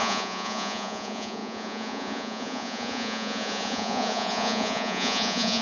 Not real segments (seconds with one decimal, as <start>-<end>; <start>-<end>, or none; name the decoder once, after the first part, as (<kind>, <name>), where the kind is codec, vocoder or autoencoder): 0.0-5.6 (vocoder, Vocos)